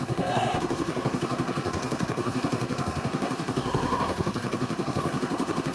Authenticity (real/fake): fake